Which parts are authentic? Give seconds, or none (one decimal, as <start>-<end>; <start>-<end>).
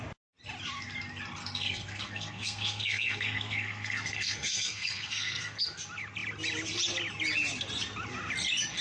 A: 0.0-1.4; 5.6-8.8